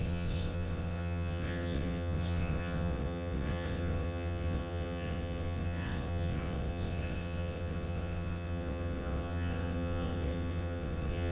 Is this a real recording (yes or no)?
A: no